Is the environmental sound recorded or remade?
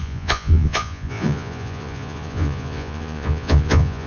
remade